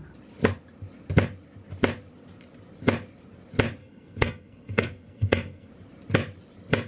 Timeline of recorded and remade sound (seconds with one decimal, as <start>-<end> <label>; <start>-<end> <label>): 0.0-3.8 recorded; 3.8-5.7 remade; 5.7-6.9 recorded